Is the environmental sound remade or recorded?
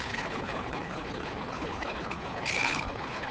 remade